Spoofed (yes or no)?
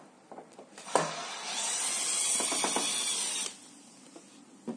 no